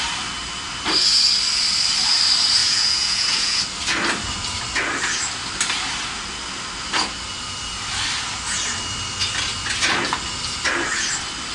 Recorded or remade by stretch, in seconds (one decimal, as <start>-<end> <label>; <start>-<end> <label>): 0.0-2.6 recorded; 2.6-3.6 remade; 3.6-11.5 recorded